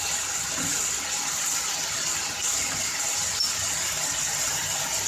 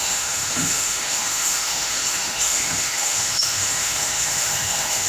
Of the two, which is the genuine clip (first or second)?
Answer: first